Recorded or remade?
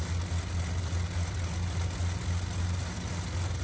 recorded